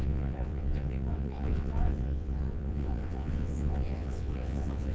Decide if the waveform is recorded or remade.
remade